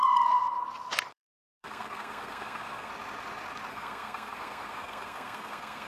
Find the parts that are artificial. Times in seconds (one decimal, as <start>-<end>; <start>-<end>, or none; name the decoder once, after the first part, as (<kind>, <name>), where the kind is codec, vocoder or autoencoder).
1.1-2.9 (codec, SNAC); 3.7-5.9